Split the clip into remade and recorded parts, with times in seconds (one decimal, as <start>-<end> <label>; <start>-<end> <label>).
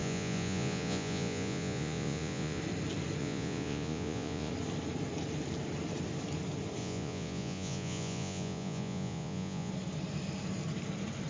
0.0-2.6 remade; 2.6-3.2 recorded; 3.2-4.5 remade; 4.5-6.8 recorded; 6.8-9.7 remade; 9.7-11.3 recorded